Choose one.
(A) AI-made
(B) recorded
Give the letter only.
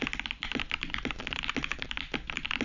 B